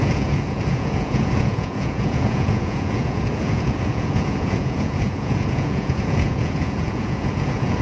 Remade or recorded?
remade